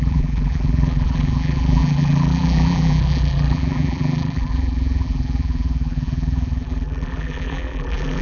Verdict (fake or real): fake